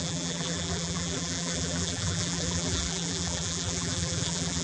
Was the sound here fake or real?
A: fake